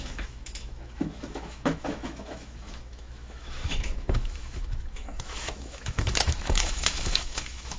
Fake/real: fake